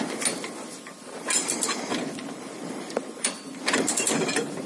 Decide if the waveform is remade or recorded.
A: remade